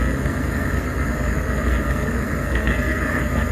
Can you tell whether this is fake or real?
fake